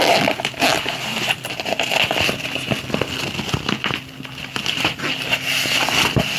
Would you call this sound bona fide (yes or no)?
yes